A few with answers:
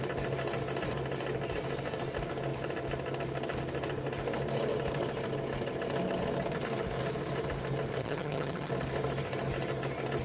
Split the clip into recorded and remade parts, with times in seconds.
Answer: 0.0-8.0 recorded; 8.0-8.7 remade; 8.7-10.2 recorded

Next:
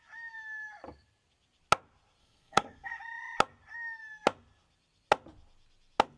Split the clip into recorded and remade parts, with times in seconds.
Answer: 0.0-2.2 recorded; 2.2-3.0 remade; 3.0-6.2 recorded

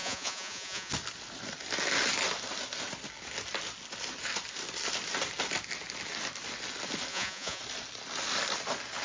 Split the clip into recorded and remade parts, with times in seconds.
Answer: 0.0-0.9 remade; 0.9-7.1 recorded; 7.1-7.6 remade; 7.6-9.0 recorded

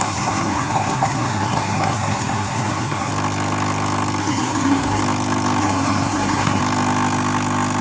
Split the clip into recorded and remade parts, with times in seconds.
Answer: 0.0-3.1 remade; 3.1-4.2 recorded; 4.2-5.0 remade; 5.0-5.6 recorded; 5.6-6.6 remade; 6.6-7.8 recorded

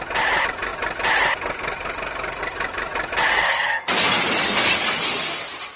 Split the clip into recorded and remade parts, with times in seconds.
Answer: 0.0-3.3 recorded; 3.3-3.9 remade; 3.9-5.8 recorded

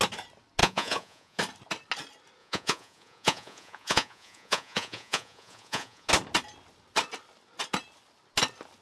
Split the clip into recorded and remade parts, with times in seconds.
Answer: 0.0-0.6 recorded; 0.6-1.4 remade; 1.4-2.4 recorded; 2.4-6.1 remade; 6.1-8.8 recorded

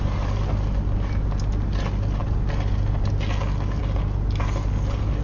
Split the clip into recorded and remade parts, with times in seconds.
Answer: 0.0-5.2 recorded

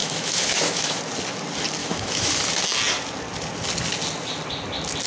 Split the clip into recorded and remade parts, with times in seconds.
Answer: 0.0-1.0 remade; 1.0-1.8 recorded; 1.8-2.3 remade; 2.3-5.1 recorded